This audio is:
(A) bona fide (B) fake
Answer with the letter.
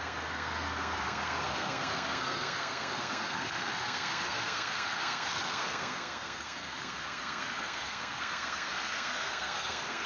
B